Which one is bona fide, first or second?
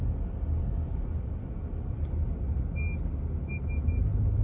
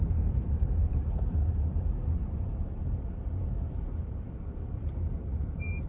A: first